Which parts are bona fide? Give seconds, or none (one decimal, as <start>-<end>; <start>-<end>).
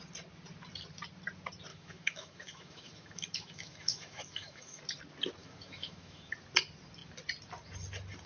0.0-1.7; 4.8-5.4; 6.3-8.3